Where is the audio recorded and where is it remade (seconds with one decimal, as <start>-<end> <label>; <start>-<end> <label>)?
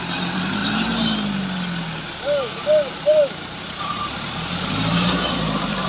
0.0-0.6 remade; 0.6-3.8 recorded; 3.8-5.9 remade